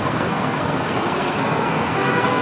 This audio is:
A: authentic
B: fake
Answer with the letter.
B